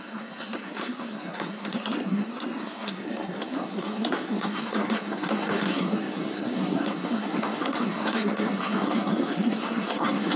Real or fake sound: fake